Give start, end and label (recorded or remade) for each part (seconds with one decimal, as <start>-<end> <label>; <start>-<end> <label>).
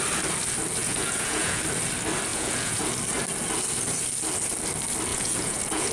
0.0-0.8 recorded; 0.8-1.6 remade; 1.6-2.3 recorded; 2.3-2.9 remade; 2.9-5.1 recorded; 5.1-5.9 remade